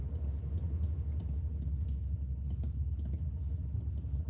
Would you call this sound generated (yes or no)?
no